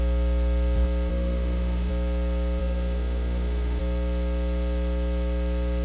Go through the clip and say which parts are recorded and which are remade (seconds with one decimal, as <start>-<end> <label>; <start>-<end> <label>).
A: 0.0-1.1 recorded; 1.1-1.9 remade; 1.9-2.6 recorded; 2.6-3.8 remade; 3.8-5.8 recorded